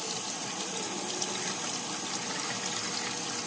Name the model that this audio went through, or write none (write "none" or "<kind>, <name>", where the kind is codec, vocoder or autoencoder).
none